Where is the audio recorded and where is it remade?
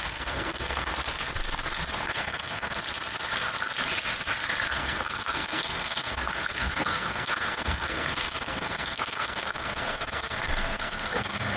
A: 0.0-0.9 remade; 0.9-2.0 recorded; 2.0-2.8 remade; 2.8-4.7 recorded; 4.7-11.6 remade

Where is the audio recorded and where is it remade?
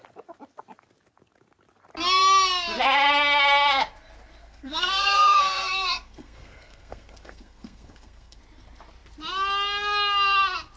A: 0.0-4.4 recorded; 4.4-8.4 remade; 8.4-10.8 recorded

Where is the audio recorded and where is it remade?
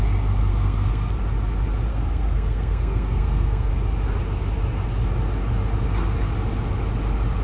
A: 0.0-0.5 recorded; 0.5-1.1 remade; 1.1-1.9 recorded; 1.9-3.7 remade; 3.7-7.4 recorded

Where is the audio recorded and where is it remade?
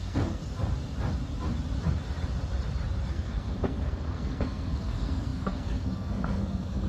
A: 0.0-0.4 remade; 0.4-3.1 recorded; 3.1-6.9 remade